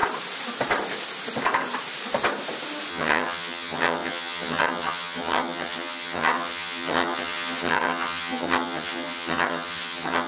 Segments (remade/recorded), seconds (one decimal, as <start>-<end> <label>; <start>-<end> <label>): 0.0-2.9 recorded; 2.9-10.3 remade